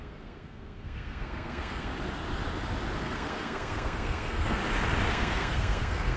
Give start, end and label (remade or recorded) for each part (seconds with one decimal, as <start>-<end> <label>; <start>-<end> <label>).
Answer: 0.0-1.9 remade; 1.9-3.0 recorded; 3.0-4.6 remade; 4.6-5.1 recorded; 5.1-6.2 remade